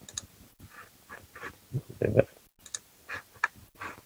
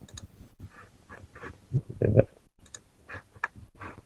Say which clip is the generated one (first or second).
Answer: second